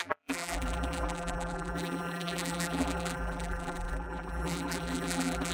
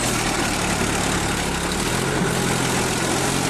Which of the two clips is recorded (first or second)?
second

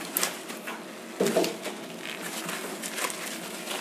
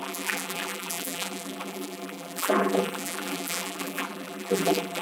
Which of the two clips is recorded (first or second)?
first